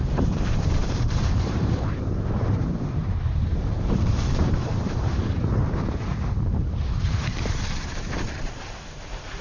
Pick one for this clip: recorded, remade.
remade